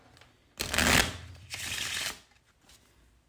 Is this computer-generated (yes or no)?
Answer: no